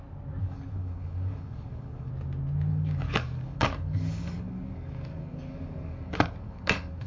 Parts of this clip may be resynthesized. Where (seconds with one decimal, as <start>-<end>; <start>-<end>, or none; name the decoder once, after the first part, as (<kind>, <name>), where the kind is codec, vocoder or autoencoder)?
0.4-2.1 (codec, DAC); 2.7-7.1

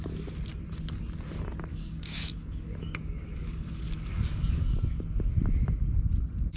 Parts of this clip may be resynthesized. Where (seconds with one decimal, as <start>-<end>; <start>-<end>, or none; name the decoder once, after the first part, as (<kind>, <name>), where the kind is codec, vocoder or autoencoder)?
1.7-5.0 (codec, DAC)

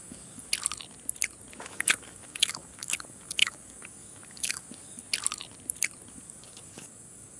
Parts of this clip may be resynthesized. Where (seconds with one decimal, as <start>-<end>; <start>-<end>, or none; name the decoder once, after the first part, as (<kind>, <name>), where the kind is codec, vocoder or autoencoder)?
0.0-0.5 (codec, DAC); 1.6-5.0; 6.1-7.4

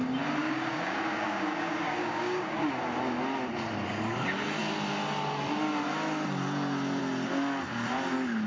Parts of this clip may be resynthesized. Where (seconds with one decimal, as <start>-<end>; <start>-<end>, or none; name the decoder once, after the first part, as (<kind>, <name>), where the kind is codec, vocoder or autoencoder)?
0.4-2.7 (codec, DAC)

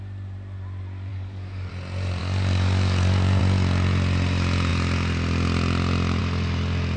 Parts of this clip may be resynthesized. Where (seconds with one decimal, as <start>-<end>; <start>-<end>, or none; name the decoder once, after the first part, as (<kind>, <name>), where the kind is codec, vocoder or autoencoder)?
1.1-1.7 (codec, DAC); 2.2-3.4